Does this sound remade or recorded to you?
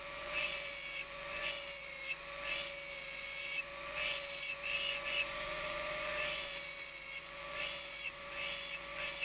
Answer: remade